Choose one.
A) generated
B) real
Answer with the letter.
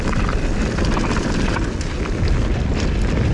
B